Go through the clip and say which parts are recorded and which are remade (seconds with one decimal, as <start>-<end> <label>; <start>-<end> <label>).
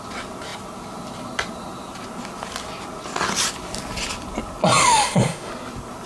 0.0-4.8 recorded; 4.8-5.5 remade; 5.5-6.1 recorded